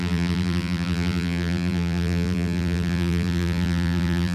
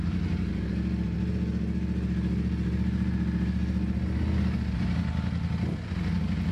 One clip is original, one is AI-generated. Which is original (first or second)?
second